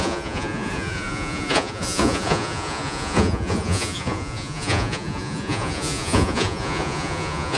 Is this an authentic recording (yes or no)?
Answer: no